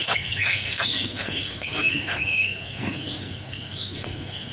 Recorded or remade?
remade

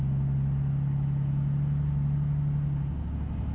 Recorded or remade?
recorded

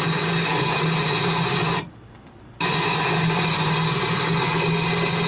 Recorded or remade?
recorded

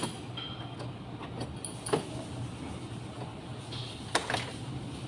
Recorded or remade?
recorded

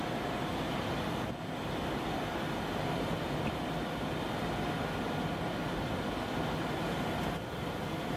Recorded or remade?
recorded